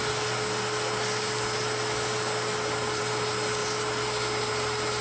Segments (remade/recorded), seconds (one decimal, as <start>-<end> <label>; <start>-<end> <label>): 0.0-5.0 recorded